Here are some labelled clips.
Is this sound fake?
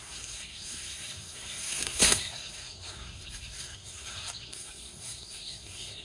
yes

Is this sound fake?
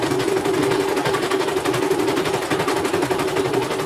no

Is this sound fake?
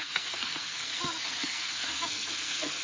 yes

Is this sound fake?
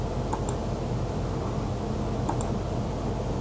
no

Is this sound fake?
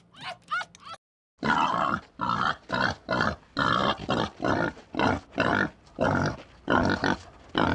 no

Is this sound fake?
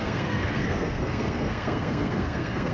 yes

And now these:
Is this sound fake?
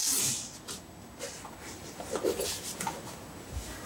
no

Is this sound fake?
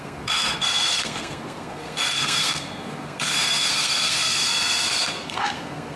yes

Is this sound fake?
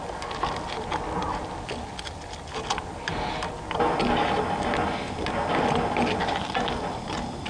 no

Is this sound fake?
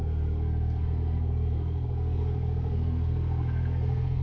yes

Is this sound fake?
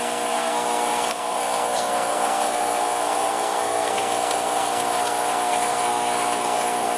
yes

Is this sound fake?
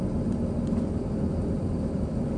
no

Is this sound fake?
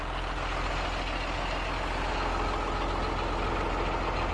no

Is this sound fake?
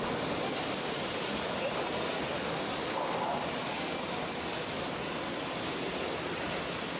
no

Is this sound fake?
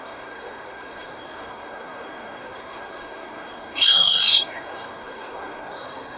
yes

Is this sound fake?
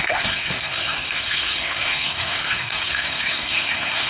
yes